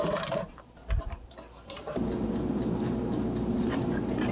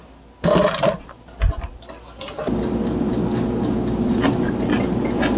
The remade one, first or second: first